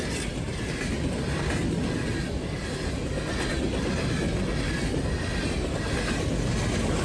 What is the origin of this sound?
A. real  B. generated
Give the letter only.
A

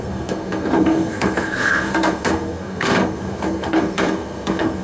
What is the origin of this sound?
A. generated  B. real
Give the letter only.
A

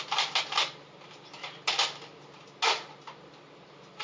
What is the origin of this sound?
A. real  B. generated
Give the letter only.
A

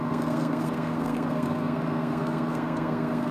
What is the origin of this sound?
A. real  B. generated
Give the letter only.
B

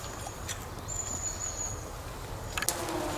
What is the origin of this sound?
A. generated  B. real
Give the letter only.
B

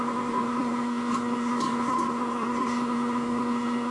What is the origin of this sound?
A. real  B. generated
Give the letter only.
B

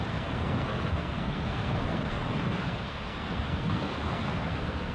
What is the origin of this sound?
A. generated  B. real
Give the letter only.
A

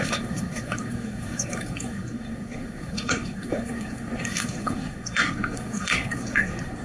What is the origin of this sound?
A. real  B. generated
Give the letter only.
B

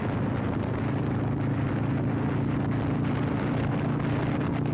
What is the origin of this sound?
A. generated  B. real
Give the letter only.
B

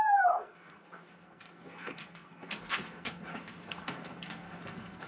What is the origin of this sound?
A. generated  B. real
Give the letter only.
A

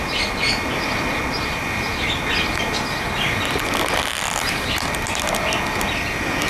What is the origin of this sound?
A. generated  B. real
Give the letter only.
B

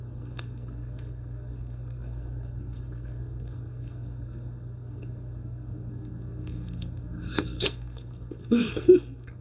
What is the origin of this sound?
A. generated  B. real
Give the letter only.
A